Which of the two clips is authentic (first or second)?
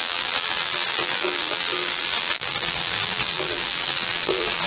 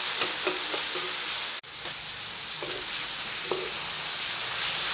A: second